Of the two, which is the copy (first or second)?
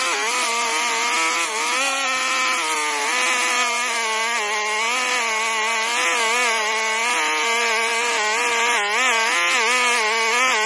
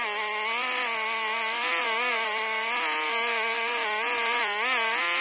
second